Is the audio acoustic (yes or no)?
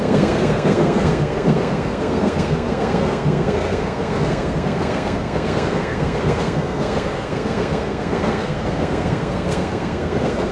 no